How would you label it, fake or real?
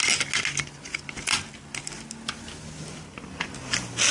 real